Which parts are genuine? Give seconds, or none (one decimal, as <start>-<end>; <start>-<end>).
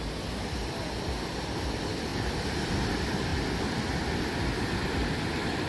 0.0-5.7